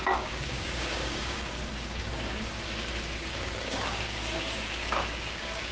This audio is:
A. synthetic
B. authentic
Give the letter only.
A